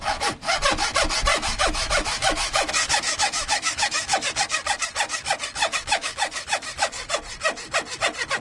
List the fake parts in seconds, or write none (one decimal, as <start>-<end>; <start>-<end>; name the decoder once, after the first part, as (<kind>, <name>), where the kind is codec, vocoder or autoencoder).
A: 1.3-4.3 (autoencoder, DAC-VAE); 5.6-7.1